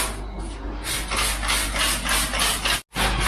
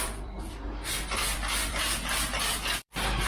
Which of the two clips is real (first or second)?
first